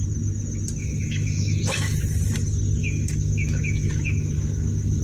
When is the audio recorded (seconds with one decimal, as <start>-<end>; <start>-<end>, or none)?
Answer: 0.0-0.8; 2.0-2.8